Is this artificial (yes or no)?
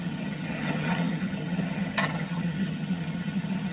yes